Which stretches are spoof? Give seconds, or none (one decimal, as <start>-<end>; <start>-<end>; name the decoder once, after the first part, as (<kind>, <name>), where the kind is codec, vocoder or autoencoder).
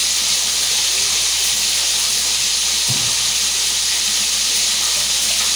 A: none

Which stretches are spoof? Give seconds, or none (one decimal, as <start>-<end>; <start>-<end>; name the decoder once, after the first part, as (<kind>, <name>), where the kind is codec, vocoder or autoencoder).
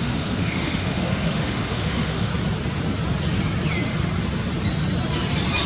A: 0.0-2.3 (autoencoder, DAC-VAE)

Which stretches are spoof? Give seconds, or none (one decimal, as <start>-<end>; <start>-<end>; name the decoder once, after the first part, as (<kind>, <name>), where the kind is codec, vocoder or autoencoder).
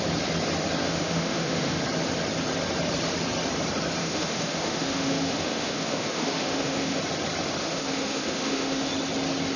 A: 0.8-1.8 (autoencoder, DAC-VAE); 4.0-7.0; 7.6-8.9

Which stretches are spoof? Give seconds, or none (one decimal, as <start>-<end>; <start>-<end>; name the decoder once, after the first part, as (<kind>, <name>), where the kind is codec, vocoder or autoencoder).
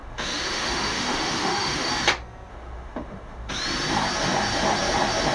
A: 0.0-1.9 (autoencoder, DAC-VAE); 2.5-3.5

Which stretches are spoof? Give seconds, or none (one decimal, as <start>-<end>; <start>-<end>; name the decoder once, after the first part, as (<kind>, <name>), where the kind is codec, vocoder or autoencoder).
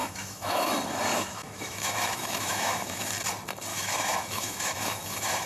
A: 0.0-0.7 (autoencoder, DAC-VAE); 1.1-3.1; 3.7-5.5